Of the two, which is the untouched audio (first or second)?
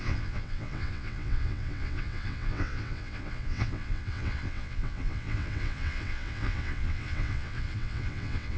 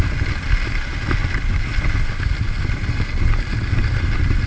second